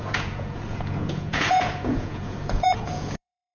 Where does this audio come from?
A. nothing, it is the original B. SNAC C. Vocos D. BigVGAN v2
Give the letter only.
C